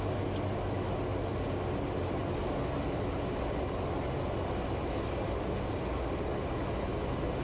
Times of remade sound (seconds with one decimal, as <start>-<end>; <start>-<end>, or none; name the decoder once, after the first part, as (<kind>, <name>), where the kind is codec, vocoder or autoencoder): none

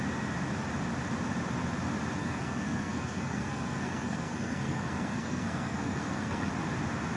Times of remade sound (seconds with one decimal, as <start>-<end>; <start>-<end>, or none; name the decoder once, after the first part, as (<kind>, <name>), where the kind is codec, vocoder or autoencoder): 2.2-6.5 (codec, SNAC)

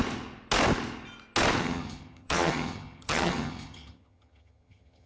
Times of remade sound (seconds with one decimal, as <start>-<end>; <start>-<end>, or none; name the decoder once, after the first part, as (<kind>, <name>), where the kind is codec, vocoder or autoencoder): 1.6-5.1 (vocoder, HiFi-GAN)

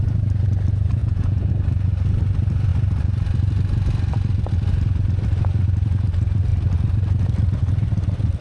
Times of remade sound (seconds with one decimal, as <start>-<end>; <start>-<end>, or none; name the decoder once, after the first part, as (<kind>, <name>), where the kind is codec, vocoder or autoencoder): 1.0-1.5 (vocoder, Vocos)

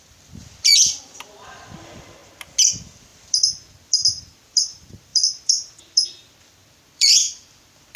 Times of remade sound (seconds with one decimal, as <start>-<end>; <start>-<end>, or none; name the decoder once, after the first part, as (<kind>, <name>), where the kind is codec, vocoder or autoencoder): 0.0-2.2 (vocoder, BigVGAN v2); 2.7-8.0